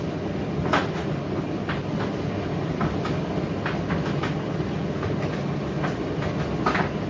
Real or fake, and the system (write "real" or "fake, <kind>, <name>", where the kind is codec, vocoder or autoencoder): real